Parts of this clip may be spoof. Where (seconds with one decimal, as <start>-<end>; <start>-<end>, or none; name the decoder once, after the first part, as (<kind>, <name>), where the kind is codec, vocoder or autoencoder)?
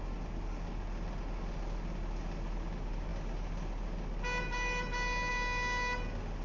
none